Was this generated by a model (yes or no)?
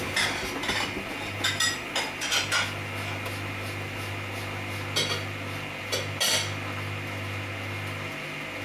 no